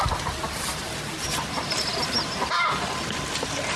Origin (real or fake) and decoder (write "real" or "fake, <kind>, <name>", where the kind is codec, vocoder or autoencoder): real